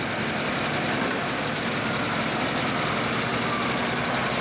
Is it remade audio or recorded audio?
recorded